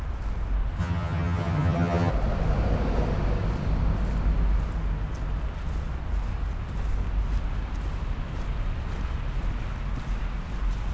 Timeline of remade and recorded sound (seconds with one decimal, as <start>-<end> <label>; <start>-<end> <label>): 0.0-0.8 recorded; 0.8-2.1 remade; 2.1-10.9 recorded